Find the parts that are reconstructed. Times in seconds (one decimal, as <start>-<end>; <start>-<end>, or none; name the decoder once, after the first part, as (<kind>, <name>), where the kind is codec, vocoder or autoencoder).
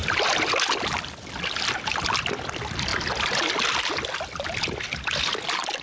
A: 0.0-1.0 (vocoder, BigVGAN v2)